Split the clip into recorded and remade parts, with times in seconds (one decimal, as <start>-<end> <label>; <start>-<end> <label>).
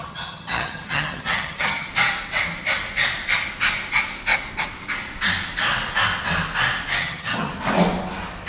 0.0-1.9 remade; 1.9-7.0 recorded; 7.0-7.5 remade; 7.5-8.5 recorded